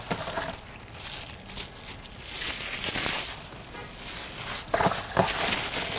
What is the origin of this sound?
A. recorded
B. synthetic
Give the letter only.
A